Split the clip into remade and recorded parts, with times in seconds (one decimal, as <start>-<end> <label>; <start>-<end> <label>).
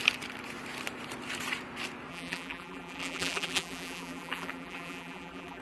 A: 0.0-2.1 recorded; 2.1-5.6 remade